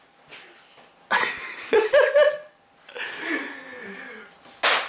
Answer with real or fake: real